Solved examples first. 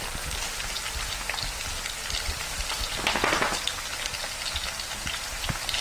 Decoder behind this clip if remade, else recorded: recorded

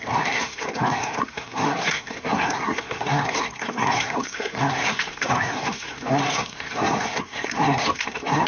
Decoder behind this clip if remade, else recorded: remade, codec, SNAC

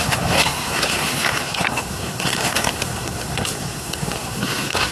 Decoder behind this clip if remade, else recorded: remade, codec, SNAC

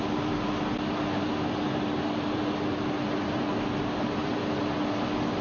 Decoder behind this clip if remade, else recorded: recorded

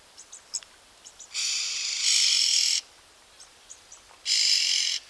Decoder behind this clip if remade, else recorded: recorded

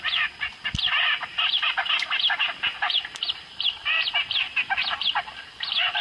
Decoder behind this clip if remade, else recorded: recorded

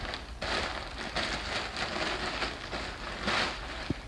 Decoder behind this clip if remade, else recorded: recorded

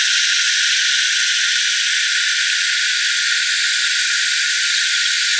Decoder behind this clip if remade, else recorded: recorded